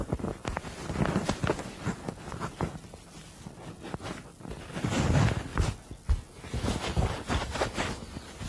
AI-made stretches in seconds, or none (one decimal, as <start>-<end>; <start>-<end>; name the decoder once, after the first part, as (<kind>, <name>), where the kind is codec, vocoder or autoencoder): none

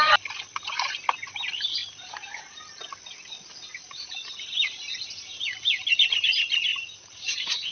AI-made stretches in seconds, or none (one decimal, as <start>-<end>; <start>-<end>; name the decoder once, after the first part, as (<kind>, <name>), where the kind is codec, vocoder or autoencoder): 1.8-2.6 (vocoder, BigVGAN v2); 3.7-4.2; 6.7-7.7